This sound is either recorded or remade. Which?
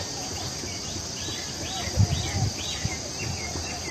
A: recorded